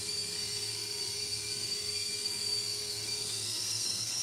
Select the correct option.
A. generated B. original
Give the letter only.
A